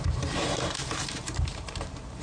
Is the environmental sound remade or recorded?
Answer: remade